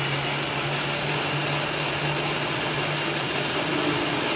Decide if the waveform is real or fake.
real